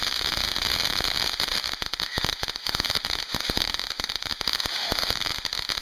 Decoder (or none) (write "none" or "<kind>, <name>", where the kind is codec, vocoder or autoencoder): autoencoder, DAC-VAE